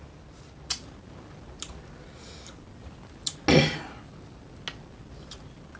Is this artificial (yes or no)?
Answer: no